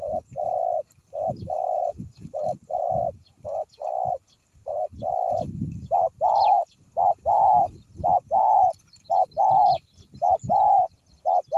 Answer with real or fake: real